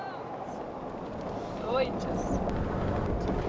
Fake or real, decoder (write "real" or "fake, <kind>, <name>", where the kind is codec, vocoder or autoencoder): real